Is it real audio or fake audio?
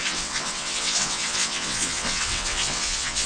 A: fake